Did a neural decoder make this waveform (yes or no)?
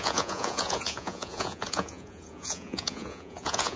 yes